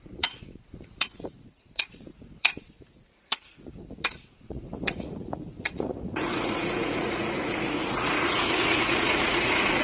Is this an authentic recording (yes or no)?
no